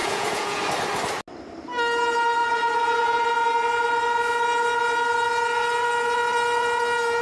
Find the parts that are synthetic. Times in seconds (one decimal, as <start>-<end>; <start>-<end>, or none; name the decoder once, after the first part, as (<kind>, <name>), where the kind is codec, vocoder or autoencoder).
0.0-0.6 (vocoder, Vocos); 2.4-3.2